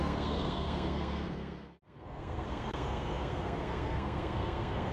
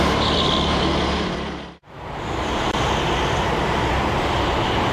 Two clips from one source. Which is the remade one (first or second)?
first